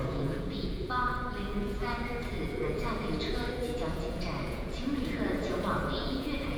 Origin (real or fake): fake